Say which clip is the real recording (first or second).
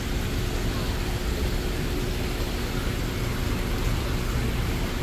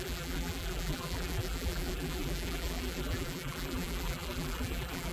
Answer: first